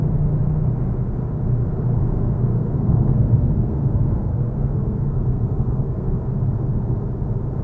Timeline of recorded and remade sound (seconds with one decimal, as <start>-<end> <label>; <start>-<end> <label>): 0.0-2.0 recorded; 2.0-6.3 remade; 6.3-7.6 recorded